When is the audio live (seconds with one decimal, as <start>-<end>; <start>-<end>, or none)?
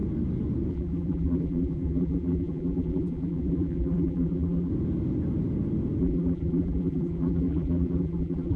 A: 0.0-0.7; 4.7-6.0